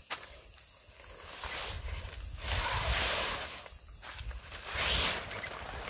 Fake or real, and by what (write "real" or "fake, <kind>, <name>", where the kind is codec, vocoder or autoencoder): real